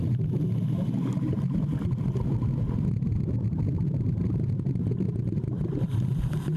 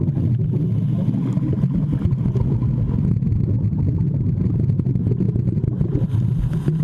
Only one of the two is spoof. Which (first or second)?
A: first